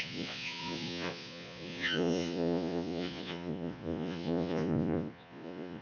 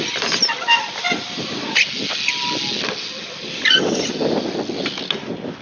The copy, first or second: first